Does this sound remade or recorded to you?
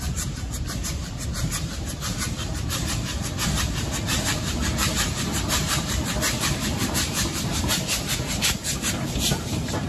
remade